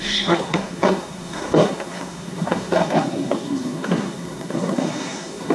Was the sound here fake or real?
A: fake